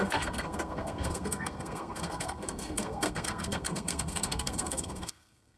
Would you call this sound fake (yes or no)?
yes